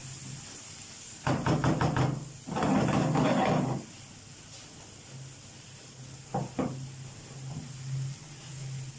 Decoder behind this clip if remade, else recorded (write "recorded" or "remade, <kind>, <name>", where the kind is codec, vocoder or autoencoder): recorded